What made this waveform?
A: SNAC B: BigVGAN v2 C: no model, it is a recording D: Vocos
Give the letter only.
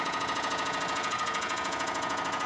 D